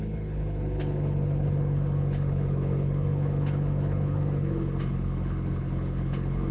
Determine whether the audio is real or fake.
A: fake